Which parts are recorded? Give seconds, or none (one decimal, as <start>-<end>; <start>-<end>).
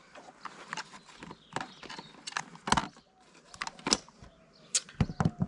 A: 0.0-2.8; 3.6-5.5